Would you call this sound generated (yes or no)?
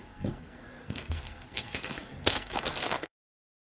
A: yes